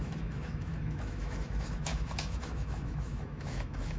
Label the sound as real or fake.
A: fake